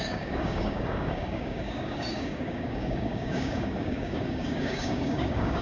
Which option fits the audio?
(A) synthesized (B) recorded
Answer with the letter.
A